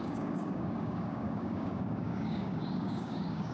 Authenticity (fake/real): fake